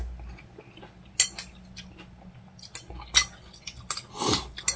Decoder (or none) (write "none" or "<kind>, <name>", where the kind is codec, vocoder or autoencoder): none